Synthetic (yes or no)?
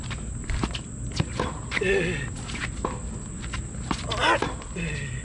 no